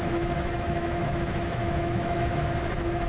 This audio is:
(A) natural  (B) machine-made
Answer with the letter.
B